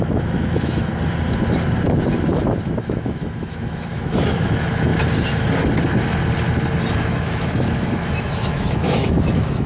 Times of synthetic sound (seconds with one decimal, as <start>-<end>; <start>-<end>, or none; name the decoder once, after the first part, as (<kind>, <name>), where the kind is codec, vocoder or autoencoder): 0.0-0.9 (autoencoder, DAC-VAE); 2.8-4.9; 6.9-9.7